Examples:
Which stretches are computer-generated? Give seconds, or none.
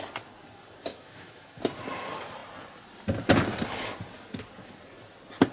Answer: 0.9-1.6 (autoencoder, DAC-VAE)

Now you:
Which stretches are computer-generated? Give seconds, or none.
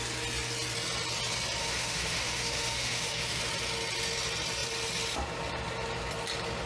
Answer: 1.6-3.4 (autoencoder, DAC-VAE)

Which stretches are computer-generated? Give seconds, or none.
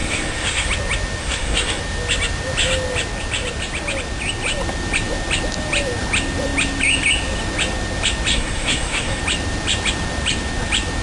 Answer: 0.0-0.7 (codec, SNAC); 1.2-1.8; 8.3-9.2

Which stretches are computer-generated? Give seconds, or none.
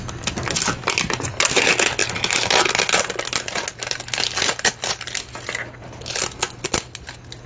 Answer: none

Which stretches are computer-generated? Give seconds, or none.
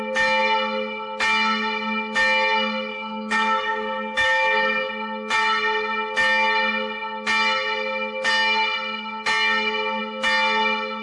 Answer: 2.9-4.9 (codec, DAC)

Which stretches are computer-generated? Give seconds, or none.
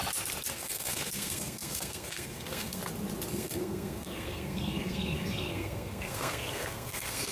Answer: 0.5-2.8 (codec, SNAC); 3.3-7.3